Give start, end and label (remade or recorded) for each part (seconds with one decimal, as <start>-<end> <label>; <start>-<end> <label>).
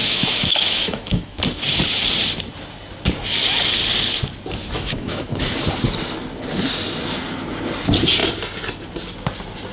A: 0.0-1.4 remade; 1.4-4.6 recorded; 4.6-5.5 remade; 5.5-9.7 recorded